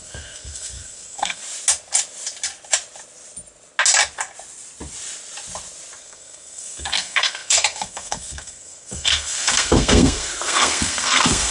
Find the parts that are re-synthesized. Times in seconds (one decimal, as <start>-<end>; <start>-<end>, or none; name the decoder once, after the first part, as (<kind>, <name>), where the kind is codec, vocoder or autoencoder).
0.0-1.4 (codec, SNAC); 6.0-11.5